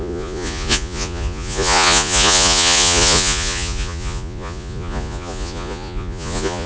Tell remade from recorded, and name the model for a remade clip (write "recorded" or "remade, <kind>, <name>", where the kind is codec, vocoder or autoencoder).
remade, vocoder, Vocos